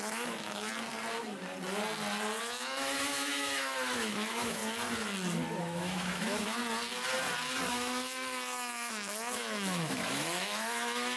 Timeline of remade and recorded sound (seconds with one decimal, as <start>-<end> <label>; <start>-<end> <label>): 0.0-0.7 remade; 0.7-2.4 recorded; 2.4-4.6 remade; 4.6-5.6 recorded; 5.6-6.6 remade; 6.6-7.7 recorded; 7.7-11.2 remade